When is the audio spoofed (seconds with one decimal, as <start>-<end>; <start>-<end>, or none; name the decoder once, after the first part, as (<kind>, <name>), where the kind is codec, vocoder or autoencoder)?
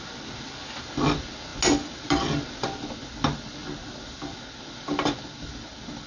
none